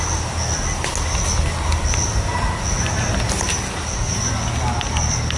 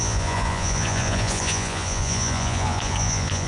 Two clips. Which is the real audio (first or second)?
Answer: first